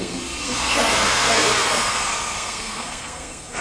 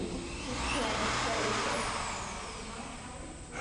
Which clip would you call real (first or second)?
second